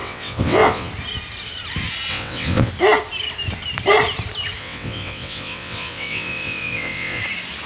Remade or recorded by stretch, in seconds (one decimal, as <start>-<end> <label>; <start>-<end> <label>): 0.0-0.9 remade; 0.9-2.1 recorded; 2.1-2.7 remade; 2.7-4.6 recorded; 4.6-7.2 remade; 7.2-7.7 recorded